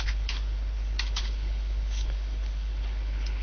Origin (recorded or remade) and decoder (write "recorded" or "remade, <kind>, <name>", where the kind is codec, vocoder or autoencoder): remade, codec, HILCodec